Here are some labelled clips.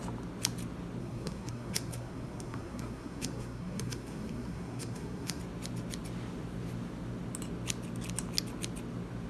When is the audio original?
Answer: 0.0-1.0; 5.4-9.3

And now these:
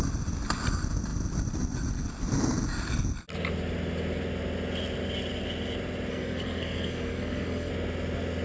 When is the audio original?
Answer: 0.0-6.1; 7.7-8.4

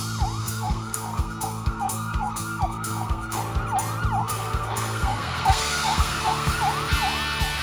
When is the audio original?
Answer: 0.0-0.4; 3.4-4.2; 6.6-7.6

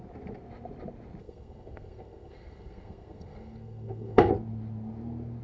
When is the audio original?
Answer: 0.0-1.2; 4.3-5.4

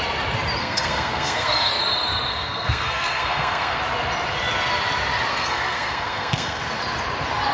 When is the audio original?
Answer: 0.0-0.6; 1.8-2.3; 3.8-5.3; 6.6-7.5

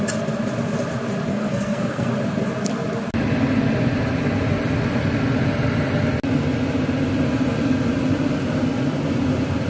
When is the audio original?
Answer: 0.0-1.3; 2.1-9.7

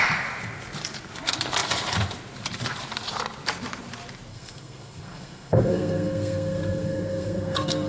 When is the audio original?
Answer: 0.0-4.3

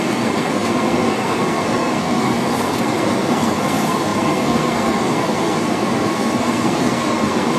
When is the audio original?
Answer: none